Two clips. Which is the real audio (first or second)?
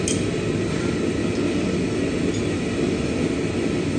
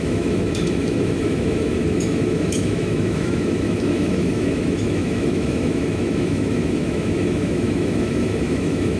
first